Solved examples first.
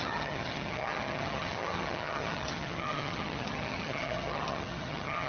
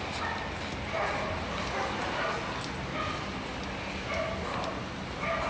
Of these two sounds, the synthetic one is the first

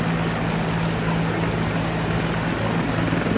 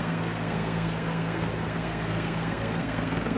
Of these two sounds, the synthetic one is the second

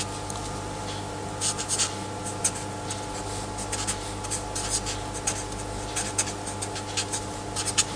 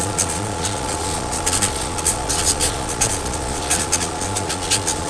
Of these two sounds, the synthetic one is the second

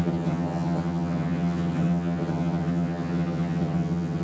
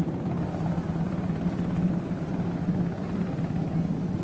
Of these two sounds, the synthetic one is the first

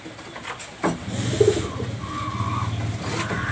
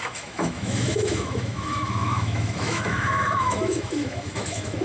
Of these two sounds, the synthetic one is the second